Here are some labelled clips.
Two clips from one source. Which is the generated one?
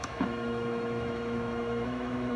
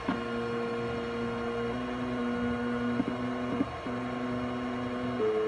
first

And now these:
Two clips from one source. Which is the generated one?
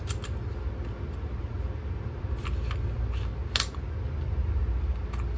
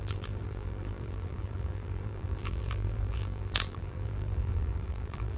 second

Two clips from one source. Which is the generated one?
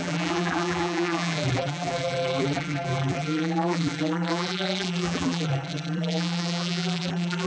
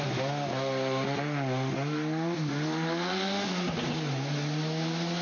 first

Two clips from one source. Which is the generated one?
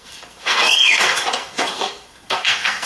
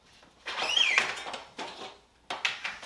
first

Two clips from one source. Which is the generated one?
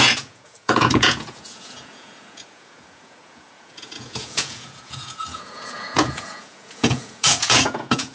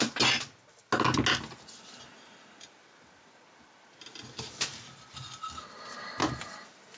first